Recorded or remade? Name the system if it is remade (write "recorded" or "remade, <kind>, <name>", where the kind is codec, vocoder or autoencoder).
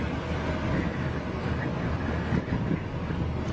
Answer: recorded